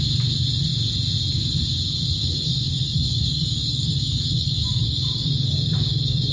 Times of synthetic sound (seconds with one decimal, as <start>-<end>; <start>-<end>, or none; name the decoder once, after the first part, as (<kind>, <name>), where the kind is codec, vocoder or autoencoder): 2.2-6.3 (codec, DAC)